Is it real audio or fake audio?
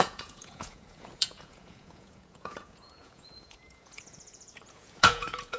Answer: fake